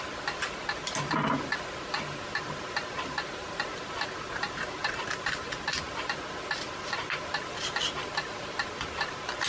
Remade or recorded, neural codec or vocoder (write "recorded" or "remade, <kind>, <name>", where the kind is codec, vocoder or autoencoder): recorded